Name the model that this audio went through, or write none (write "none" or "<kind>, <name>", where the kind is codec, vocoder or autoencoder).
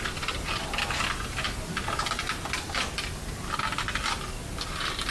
none